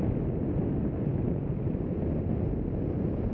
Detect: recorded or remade recorded